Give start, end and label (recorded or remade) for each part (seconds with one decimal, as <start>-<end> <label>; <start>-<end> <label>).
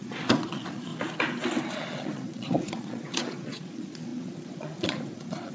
0.0-0.9 remade; 0.9-1.6 recorded; 1.6-5.5 remade